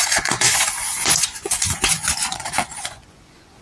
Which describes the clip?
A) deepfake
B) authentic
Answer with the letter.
A